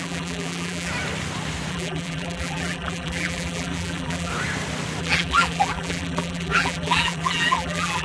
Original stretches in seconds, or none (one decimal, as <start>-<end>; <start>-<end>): 0.9-1.7; 4.3-5.0